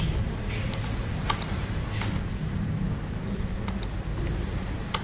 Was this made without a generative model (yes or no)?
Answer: yes